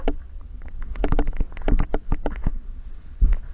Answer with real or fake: real